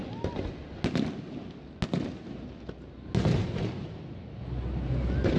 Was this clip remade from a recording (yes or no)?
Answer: no